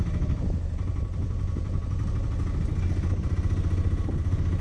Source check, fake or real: real